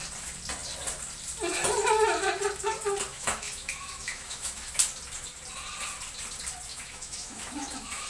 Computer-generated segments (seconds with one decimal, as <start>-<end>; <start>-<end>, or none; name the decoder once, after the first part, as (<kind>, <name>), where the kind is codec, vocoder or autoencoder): 3.1-4.7 (autoencoder, DAC-VAE); 6.7-8.1